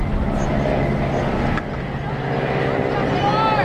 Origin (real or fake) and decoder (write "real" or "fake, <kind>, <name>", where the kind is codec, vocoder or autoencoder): real